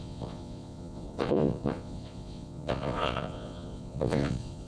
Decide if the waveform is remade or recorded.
remade